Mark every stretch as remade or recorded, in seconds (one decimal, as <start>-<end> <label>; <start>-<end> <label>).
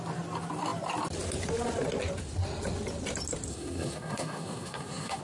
0.0-3.5 recorded; 3.5-5.2 remade